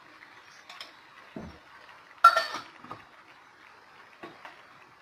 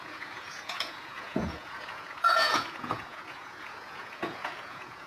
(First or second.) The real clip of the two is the first